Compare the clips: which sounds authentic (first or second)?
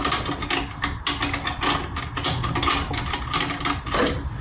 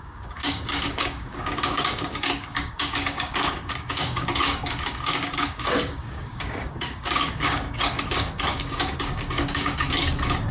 first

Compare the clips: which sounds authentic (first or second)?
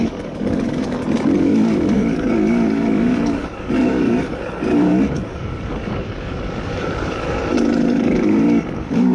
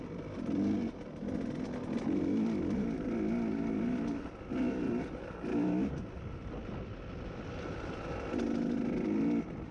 second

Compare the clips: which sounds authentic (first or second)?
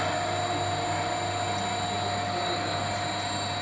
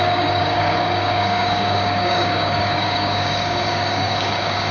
first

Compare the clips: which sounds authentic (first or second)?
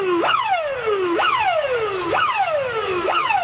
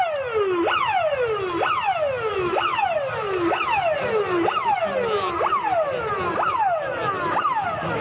second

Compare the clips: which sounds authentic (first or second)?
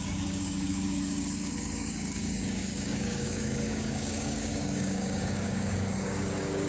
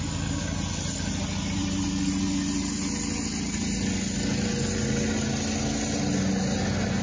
second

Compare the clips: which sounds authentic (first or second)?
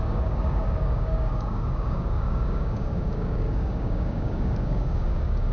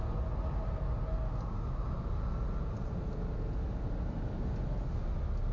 second